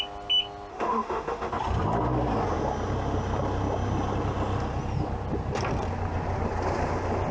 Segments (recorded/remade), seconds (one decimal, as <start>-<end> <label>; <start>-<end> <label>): 0.0-0.7 recorded; 0.7-1.5 remade; 1.5-7.3 recorded